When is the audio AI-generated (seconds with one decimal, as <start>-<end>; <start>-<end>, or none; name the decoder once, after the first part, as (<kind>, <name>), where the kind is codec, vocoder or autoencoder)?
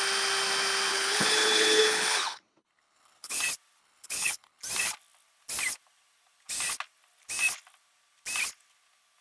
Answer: 0.9-3.4 (codec, HILCodec); 3.8-4.6